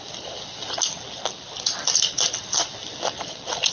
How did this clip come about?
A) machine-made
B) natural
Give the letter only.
A